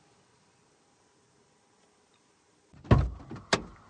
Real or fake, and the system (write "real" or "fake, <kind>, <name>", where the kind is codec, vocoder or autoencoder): real